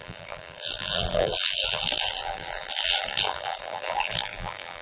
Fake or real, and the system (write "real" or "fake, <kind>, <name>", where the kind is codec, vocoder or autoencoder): fake, vocoder, BigVGAN v2